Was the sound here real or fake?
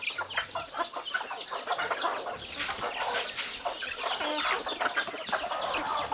real